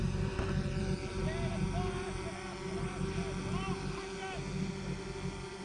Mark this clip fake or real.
real